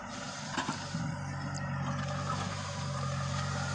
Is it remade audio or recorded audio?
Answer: recorded